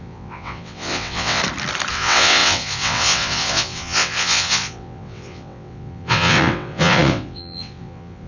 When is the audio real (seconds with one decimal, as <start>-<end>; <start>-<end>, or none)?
1.4-1.9